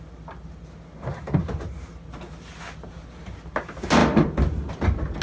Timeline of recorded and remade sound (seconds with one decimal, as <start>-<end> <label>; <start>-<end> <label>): 0.0-5.2 recorded